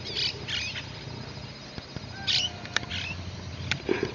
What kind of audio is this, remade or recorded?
recorded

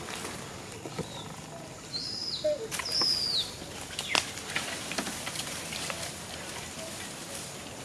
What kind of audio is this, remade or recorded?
recorded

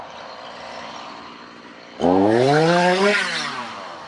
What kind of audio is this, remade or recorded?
remade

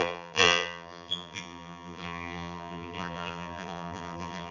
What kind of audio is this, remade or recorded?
remade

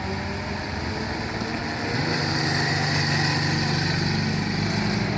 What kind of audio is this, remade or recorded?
recorded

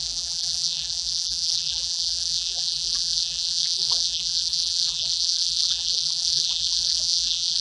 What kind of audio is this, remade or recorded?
remade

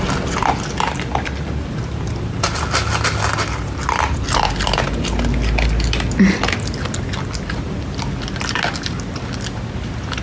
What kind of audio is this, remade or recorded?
recorded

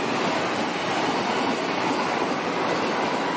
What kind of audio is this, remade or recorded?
recorded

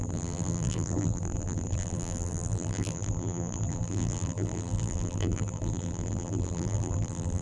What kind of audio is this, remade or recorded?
remade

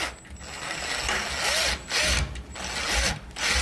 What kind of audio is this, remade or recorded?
recorded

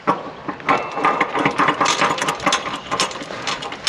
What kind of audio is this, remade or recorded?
recorded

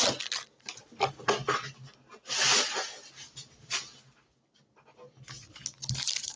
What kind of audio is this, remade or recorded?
recorded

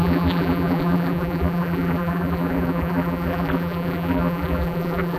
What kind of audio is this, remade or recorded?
remade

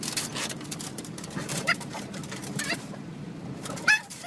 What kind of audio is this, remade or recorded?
remade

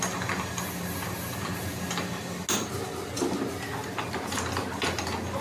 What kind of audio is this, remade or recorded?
recorded